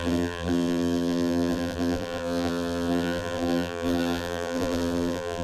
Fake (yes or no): yes